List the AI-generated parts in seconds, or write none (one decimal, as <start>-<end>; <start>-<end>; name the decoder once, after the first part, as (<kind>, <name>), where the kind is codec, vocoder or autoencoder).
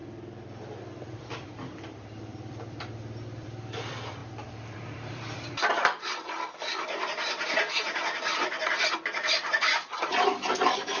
0.0-11.0 (vocoder, BigVGAN v2)